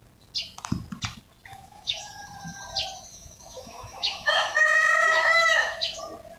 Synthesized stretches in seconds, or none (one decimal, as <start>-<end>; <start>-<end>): 1.5-2.1; 3.1-6.0